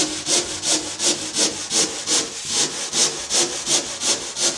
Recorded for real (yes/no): yes